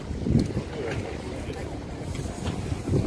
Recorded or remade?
recorded